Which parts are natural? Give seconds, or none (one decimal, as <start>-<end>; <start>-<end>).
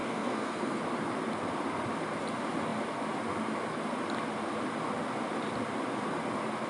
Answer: 0.8-6.7